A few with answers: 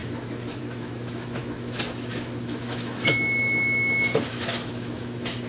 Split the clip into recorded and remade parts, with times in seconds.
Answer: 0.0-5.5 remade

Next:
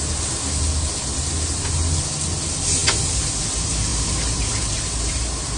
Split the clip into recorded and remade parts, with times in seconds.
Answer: 0.0-3.9 recorded; 3.9-5.6 remade

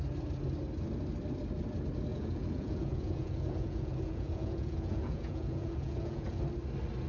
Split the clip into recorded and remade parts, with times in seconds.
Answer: 0.0-2.1 recorded; 2.1-6.4 remade; 6.4-7.1 recorded

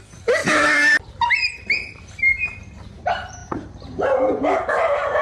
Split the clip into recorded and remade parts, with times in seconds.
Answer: 0.0-0.4 remade; 0.4-1.1 recorded; 1.1-5.2 remade

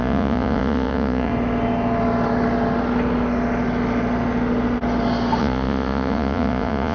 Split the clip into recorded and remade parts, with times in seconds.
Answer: 0.0-1.3 remade; 1.3-5.4 recorded; 5.4-6.9 remade

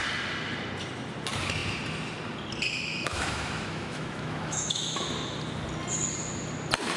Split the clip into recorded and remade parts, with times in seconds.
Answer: 0.0-2.9 recorded; 2.9-5.1 remade; 5.1-7.0 recorded

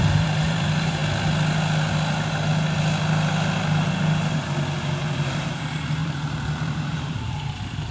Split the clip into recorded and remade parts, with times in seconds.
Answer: 0.0-1.0 remade; 1.0-5.1 recorded; 5.1-7.9 remade

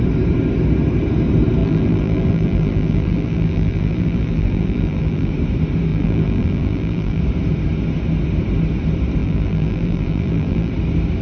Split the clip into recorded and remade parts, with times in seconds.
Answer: 0.0-1.6 recorded; 1.6-5.3 remade; 5.3-5.9 recorded; 5.9-7.2 remade; 7.2-9.2 recorded; 9.2-10.7 remade; 10.7-11.2 recorded